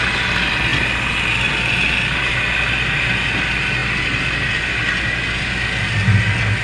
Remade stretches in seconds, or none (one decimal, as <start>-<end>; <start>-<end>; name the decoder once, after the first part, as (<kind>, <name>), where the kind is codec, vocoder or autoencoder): none